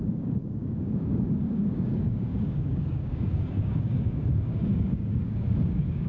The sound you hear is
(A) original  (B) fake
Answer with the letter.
B